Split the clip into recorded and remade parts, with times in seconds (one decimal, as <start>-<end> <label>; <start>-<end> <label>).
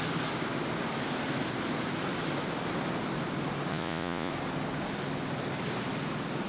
0.0-3.7 recorded; 3.7-4.3 remade; 4.3-6.5 recorded